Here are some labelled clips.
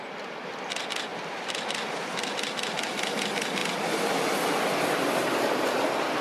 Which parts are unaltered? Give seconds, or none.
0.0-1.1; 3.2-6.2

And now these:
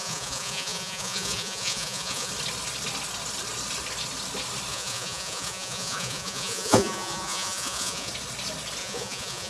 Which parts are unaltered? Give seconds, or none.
2.3-4.7; 8.1-8.8